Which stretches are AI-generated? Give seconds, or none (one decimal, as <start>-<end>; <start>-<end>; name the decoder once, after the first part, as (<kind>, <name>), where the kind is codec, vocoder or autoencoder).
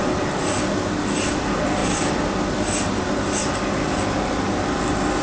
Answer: none